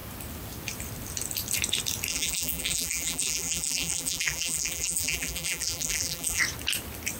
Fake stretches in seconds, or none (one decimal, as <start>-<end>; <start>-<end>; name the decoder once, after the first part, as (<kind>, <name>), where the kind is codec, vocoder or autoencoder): 2.1-6.4 (vocoder, BigVGAN v2)